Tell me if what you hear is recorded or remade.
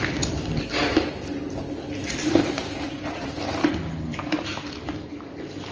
recorded